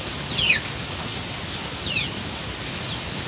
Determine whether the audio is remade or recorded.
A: recorded